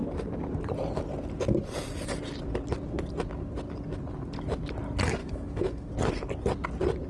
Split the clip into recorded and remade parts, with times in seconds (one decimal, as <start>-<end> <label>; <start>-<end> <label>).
0.0-5.2 recorded; 5.2-5.9 remade; 5.9-7.1 recorded